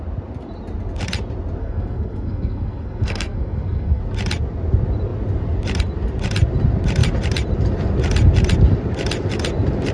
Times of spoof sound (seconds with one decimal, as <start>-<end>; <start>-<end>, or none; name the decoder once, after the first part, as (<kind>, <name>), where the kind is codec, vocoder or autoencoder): 1.6-4.0 (codec, SNAC)